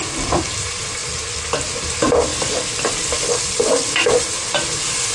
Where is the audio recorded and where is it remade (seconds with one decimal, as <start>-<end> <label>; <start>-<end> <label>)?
0.0-1.0 remade; 1.0-1.8 recorded; 1.8-2.3 remade; 2.3-5.1 recorded